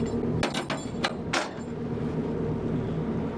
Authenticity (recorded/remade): recorded